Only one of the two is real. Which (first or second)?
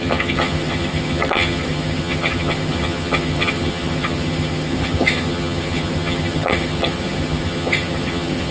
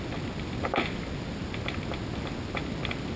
second